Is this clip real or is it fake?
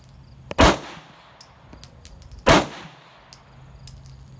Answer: real